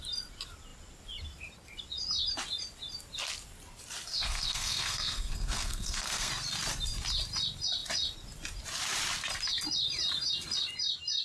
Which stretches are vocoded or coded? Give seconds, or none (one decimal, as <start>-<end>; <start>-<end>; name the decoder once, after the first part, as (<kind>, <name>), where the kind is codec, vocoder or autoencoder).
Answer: 4.1-6.3 (codec, SNAC)